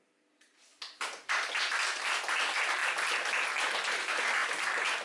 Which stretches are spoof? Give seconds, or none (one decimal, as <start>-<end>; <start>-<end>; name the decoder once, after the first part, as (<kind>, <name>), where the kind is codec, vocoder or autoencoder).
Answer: none

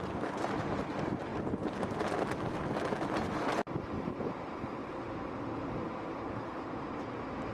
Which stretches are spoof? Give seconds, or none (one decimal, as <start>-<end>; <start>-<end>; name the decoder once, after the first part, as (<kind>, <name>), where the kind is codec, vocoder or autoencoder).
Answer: 4.8-6.1 (vocoder, BigVGAN v2)

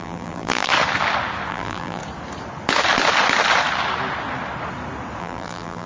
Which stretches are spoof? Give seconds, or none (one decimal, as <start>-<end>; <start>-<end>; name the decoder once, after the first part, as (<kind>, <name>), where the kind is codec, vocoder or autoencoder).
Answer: 0.0-0.7 (vocoder, BigVGAN v2); 1.5-2.0; 5.2-5.9

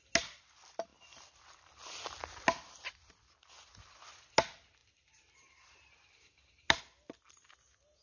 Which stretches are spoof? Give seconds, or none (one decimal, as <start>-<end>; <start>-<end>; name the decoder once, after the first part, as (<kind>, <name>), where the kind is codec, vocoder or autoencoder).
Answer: none